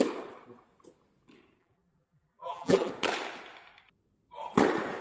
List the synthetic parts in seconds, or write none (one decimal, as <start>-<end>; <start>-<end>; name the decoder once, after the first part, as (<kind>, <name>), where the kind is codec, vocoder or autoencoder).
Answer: 1.6-2.9 (vocoder, BigVGAN v2)